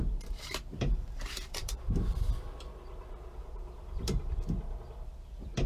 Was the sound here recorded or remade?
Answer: remade